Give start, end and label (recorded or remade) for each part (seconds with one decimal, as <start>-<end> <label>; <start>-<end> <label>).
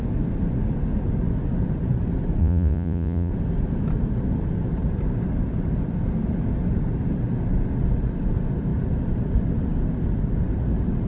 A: 0.0-2.4 recorded; 2.4-3.3 remade; 3.3-11.1 recorded